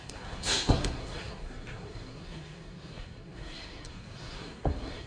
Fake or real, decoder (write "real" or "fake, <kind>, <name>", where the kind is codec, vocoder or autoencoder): fake, codec, SNAC